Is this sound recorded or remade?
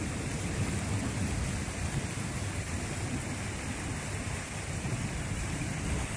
recorded